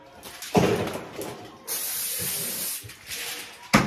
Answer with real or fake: real